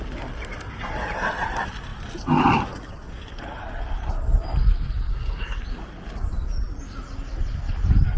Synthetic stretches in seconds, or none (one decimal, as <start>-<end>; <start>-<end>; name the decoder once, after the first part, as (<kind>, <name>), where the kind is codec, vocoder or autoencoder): 5.1-5.6 (codec, SNAC)